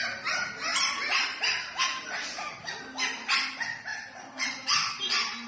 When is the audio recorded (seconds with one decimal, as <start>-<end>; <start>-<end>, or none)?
0.0-0.7; 1.8-3.9; 5.1-5.5